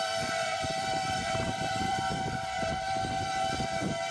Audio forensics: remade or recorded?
remade